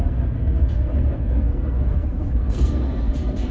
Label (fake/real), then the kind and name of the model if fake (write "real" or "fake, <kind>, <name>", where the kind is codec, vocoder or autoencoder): fake, codec, SNAC